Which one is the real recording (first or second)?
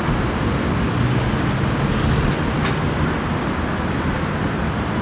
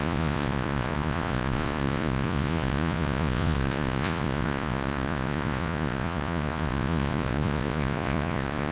first